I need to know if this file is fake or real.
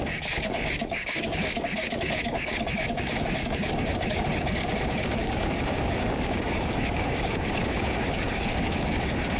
fake